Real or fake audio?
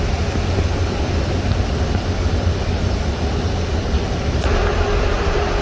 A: real